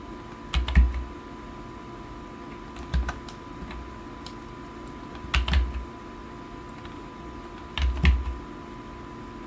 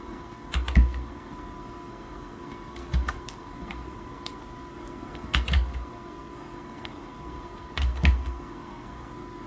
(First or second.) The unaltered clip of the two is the first